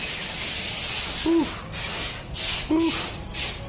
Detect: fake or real real